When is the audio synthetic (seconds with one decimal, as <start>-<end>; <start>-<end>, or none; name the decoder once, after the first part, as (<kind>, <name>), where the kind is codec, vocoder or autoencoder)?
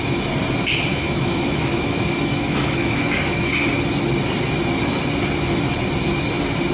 0.9-3.5 (autoencoder, DAC-VAE)